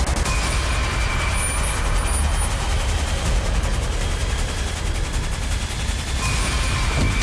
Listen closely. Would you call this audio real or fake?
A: real